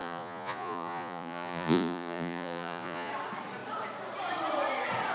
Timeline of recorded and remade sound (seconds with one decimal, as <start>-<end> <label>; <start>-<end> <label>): 0.0-3.1 remade; 3.1-5.1 recorded